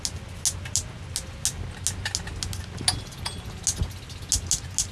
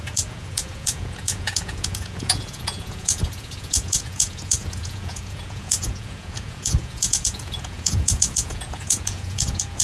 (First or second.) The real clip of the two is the first